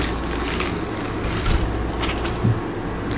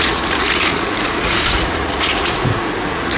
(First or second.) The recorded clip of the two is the first